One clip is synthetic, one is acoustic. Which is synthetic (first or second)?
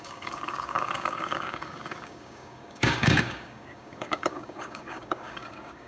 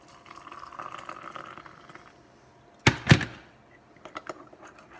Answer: first